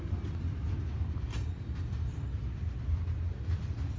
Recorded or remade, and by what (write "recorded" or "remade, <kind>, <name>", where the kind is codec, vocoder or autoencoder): recorded